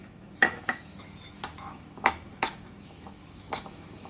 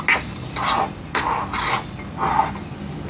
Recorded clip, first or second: second